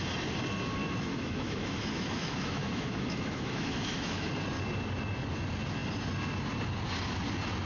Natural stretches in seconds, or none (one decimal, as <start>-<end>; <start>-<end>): 0.0-0.8; 4.3-7.7